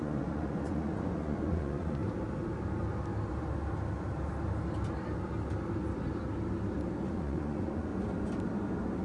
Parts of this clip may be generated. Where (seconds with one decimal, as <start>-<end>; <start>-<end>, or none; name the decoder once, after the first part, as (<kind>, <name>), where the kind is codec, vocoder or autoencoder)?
0.0-2.0 (vocoder, Vocos); 7.1-7.9